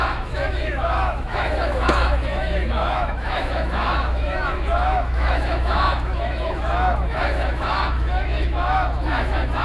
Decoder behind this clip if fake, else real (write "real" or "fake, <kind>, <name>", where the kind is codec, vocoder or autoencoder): fake, autoencoder, DAC-VAE